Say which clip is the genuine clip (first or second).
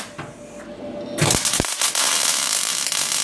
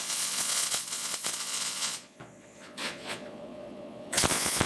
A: first